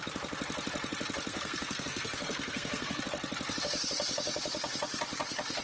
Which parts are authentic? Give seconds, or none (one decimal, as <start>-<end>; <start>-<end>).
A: 0.0-1.3; 3.0-5.6